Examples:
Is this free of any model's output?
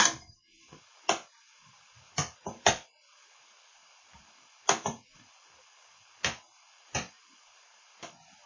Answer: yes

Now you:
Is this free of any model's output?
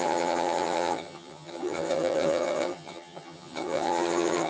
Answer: no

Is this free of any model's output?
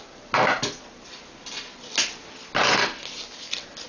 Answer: yes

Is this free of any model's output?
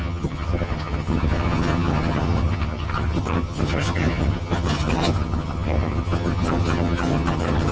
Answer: no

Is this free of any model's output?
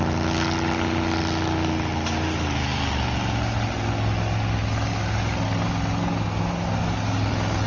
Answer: yes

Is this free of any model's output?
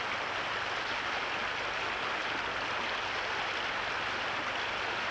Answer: yes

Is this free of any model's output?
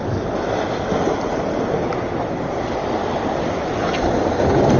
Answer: yes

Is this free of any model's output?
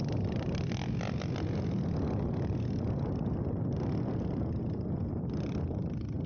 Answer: yes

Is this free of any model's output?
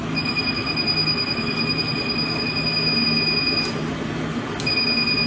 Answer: yes